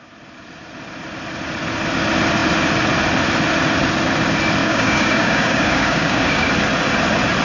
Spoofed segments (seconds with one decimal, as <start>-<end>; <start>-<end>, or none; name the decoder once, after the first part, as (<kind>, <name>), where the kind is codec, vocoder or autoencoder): 4.6-6.5 (codec, DAC)

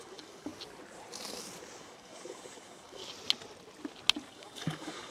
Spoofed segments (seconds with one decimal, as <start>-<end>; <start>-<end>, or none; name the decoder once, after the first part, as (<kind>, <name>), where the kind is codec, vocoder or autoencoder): 0.0-0.5 (codec, DAC); 1.8-3.0; 4.3-5.1

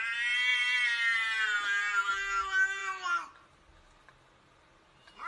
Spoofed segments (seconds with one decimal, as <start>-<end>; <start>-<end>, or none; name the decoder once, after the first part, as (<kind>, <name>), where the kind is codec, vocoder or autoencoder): none

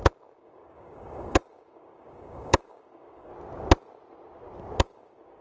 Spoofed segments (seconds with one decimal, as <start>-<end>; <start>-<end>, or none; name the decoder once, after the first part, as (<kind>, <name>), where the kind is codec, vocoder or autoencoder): 0.0-3.3 (codec, DAC); 4.8-5.4

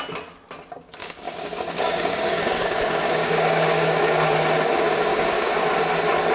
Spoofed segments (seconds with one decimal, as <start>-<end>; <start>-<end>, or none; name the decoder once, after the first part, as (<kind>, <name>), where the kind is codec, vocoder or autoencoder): 1.0-4.0 (codec, DAC); 5.1-5.7

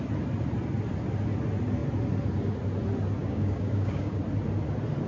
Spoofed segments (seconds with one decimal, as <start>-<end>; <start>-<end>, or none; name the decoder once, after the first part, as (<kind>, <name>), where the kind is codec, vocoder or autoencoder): 3.2-4.2 (codec, DAC)

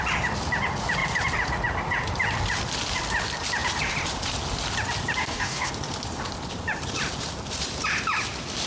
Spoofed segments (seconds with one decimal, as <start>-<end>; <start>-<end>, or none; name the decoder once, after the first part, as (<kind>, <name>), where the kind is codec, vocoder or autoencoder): 5.2-5.7 (codec, DAC)

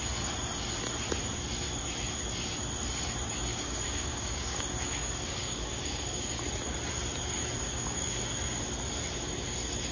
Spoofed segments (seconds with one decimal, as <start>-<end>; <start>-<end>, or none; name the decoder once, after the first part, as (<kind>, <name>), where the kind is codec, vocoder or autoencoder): 3.5-6.4 (codec, DAC); 7.6-8.2